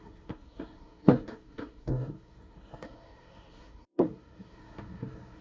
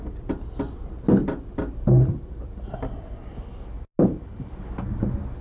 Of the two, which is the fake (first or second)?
first